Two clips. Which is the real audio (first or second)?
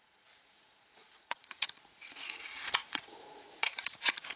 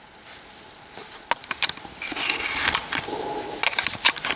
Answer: second